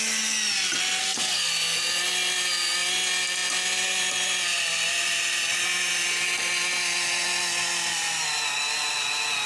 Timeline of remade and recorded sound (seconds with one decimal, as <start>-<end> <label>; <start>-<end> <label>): 0.0-1.0 recorded; 1.0-1.5 remade; 1.5-9.5 recorded